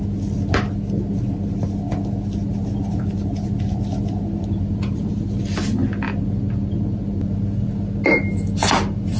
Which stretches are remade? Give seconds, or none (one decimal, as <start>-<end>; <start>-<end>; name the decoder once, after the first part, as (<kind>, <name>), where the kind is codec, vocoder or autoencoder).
none